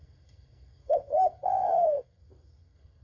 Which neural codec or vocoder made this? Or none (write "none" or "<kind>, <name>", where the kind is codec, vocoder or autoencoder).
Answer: codec, SNAC